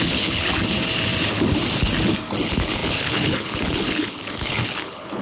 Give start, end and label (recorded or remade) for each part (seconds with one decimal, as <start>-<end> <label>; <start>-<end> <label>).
0.0-0.5 remade; 0.5-1.2 recorded; 1.2-1.6 remade; 1.6-2.4 recorded; 2.4-5.2 remade